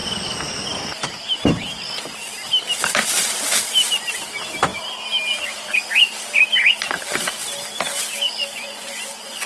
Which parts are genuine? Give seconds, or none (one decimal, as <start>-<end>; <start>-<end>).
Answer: 0.0-8.4